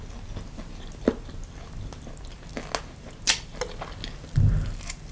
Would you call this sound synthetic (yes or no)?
no